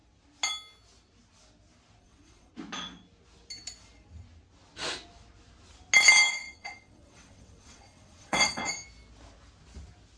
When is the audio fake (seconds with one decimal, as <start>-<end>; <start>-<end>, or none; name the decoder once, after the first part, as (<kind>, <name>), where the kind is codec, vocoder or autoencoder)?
2.0-2.5 (vocoder, WaveNeXt); 6.3-8.6